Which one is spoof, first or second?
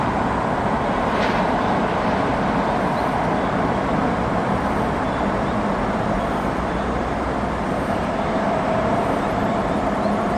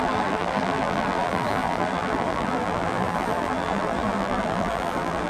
second